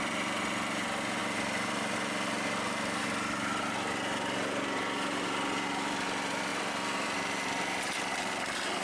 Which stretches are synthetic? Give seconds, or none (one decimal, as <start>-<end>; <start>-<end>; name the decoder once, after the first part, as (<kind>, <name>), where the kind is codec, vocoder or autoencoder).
6.5-8.1 (vocoder, BigVGAN v2)